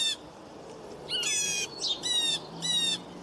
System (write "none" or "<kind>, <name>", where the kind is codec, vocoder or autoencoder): none